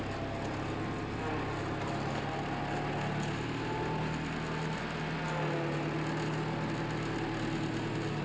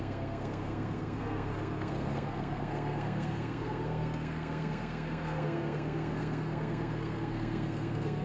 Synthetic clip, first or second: second